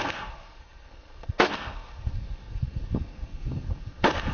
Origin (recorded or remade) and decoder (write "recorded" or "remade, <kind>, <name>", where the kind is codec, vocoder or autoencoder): remade, codec, SNAC